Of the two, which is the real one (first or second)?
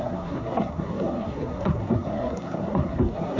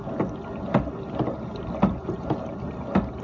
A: second